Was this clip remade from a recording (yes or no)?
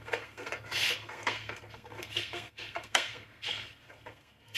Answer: yes